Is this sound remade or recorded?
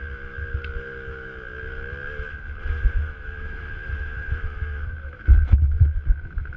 remade